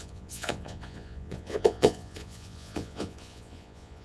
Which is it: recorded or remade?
remade